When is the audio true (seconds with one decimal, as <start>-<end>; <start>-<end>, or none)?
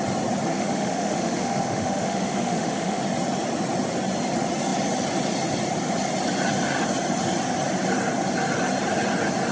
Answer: 0.0-0.5; 3.0-9.5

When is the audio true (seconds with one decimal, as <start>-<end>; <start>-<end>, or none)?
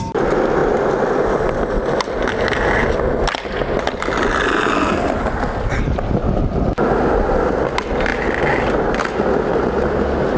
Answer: 0.0-10.4